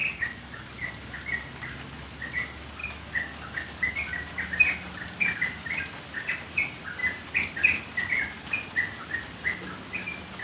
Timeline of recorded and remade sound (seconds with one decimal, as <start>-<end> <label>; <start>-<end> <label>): 0.0-0.9 remade; 0.9-2.8 recorded; 2.8-3.9 remade; 3.9-10.4 recorded